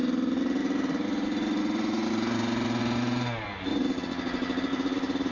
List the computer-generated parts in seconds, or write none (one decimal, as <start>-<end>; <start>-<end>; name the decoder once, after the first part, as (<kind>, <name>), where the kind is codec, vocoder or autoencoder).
0.6-2.8 (vocoder, BigVGAN v2); 4.7-5.3